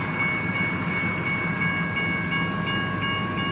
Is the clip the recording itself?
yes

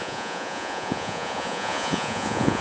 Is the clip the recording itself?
no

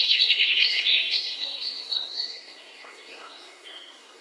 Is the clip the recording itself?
no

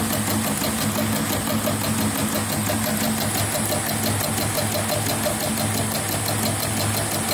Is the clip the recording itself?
yes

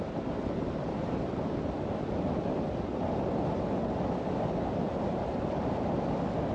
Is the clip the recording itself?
yes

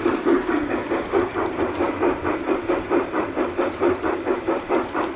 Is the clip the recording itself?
no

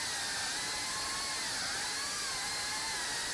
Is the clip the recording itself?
yes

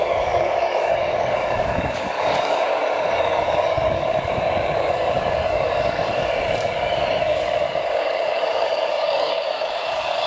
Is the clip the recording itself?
no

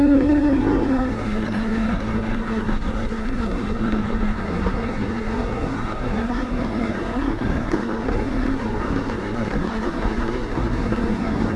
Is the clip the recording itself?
no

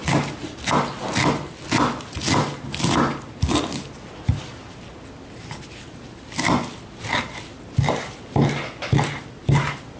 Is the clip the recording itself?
yes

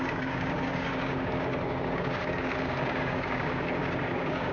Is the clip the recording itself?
no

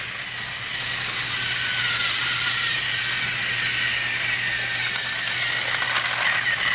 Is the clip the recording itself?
yes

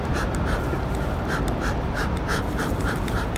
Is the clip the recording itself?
no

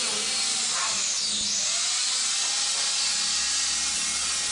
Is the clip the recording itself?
yes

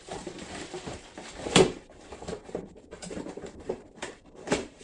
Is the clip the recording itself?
no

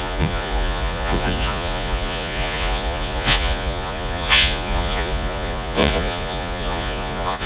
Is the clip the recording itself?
no